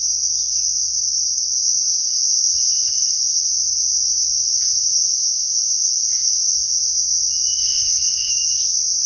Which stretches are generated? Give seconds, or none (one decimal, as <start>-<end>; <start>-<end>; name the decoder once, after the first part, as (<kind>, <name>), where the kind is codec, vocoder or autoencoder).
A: 2.0-3.5 (codec, ZipCodec); 4.3-6.8; 7.6-8.3